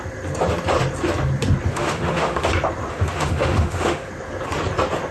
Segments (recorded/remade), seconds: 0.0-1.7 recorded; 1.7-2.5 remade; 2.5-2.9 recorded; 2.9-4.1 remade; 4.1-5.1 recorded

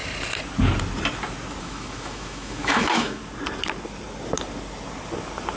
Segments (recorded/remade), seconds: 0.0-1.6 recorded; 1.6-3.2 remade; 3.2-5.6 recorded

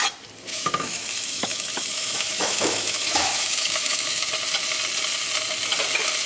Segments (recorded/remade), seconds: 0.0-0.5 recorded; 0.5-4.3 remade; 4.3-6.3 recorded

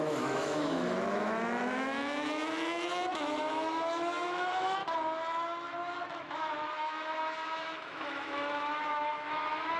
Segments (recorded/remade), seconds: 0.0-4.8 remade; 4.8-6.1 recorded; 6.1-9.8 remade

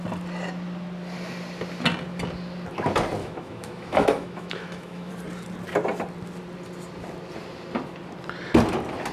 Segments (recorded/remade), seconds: 0.0-3.2 recorded; 3.2-5.1 remade; 5.1-9.1 recorded

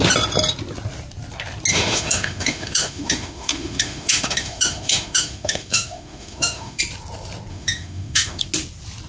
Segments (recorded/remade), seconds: 0.0-1.7 recorded; 1.7-6.8 remade; 6.8-7.5 recorded; 7.5-8.4 remade; 8.4-9.1 recorded

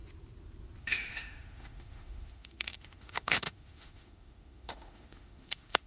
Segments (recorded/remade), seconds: 0.0-0.8 recorded; 0.8-5.9 remade

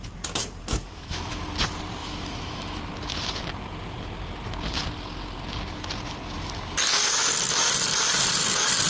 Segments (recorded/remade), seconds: 0.0-0.8 recorded; 0.8-1.4 remade; 1.4-2.0 recorded; 2.0-2.9 remade; 2.9-8.9 recorded